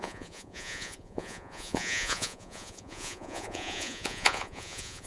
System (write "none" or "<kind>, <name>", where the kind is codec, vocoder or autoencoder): vocoder, Vocos